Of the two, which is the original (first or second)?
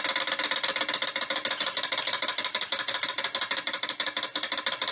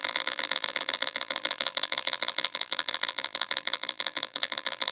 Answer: first